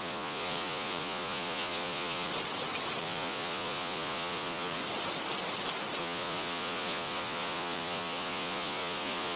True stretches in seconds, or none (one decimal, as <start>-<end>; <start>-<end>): 2.3-3.0; 4.8-6.0